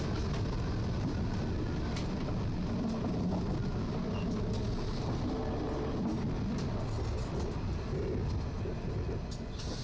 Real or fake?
real